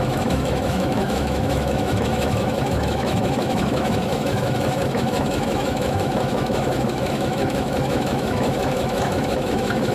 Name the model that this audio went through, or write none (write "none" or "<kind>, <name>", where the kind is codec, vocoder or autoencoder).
autoencoder, DAC-VAE